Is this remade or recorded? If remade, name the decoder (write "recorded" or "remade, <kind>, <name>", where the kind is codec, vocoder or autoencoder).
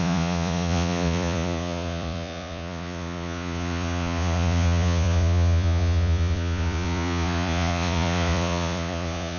remade, vocoder, Vocos